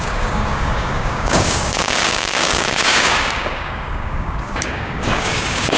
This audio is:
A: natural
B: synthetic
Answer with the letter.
B